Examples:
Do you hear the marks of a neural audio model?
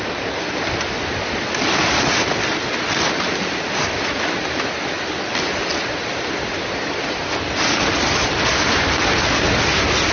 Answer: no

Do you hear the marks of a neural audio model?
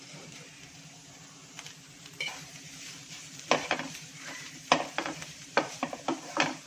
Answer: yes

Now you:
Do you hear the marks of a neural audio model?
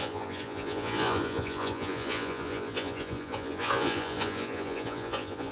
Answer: yes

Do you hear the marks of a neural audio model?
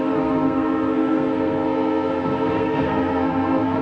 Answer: yes